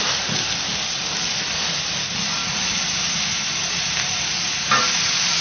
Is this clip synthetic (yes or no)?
no